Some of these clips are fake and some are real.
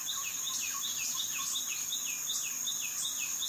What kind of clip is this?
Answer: real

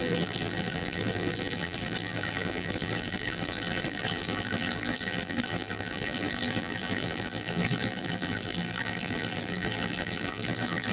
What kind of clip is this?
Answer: fake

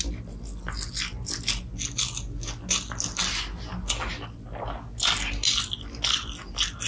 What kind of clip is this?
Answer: real